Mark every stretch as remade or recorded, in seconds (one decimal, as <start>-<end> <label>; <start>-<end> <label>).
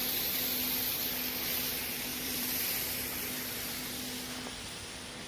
0.0-2.1 recorded; 2.1-3.9 remade; 3.9-5.3 recorded